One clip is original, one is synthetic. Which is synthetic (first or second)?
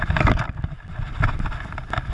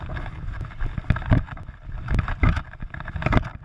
first